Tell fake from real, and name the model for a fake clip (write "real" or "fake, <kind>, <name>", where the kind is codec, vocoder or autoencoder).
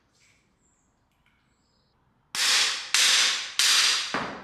real